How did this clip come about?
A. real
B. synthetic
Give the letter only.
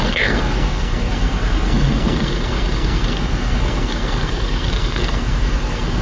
B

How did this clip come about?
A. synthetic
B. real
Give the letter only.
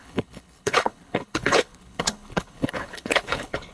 A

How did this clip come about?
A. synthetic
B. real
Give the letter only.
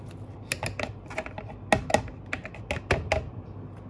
B